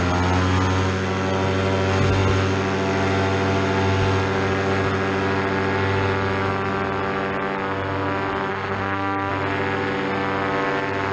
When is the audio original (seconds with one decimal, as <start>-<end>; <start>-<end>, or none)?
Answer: 0.0-8.5; 9.3-11.1